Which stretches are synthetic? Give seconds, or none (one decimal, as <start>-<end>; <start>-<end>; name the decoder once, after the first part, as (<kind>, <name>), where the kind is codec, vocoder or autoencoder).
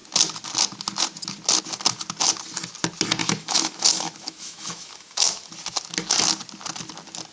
3.2-5.5 (autoencoder, DAC-VAE)